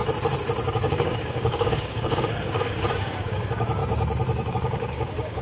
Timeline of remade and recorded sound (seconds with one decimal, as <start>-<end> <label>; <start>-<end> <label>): 0.0-0.7 recorded; 0.7-3.8 remade; 3.8-4.5 recorded; 4.5-5.4 remade